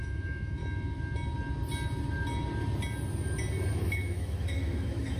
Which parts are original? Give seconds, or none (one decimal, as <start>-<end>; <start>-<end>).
0.6-3.7